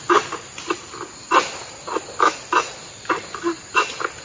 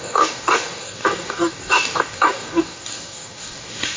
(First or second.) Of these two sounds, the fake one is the second